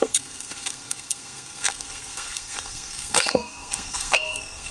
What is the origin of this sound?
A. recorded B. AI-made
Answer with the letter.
B